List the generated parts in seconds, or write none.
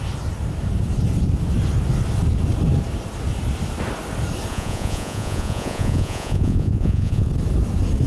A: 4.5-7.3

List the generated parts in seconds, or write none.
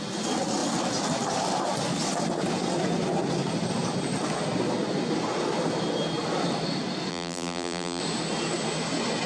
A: 7.1-8.0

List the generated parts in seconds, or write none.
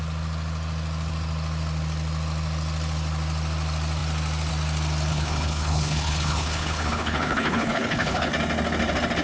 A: 5.1-8.3